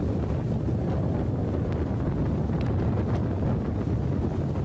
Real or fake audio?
real